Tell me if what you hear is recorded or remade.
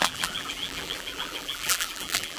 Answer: remade